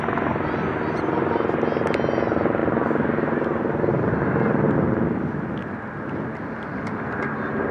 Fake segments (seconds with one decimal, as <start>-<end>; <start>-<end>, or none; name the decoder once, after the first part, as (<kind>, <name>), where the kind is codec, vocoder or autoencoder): none